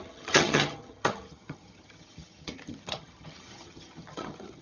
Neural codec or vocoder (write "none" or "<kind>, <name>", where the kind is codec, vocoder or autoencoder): vocoder, HiFi-GAN